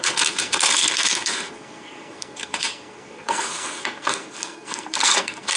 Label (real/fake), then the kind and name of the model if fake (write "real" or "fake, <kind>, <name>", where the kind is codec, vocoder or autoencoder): fake, codec, SNAC